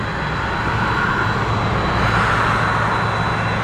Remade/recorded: recorded